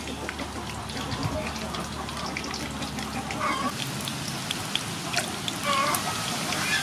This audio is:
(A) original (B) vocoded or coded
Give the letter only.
A